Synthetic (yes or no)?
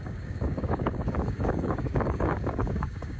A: yes